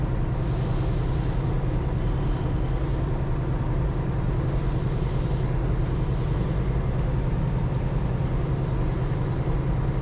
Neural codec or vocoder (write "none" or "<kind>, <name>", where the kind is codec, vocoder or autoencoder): none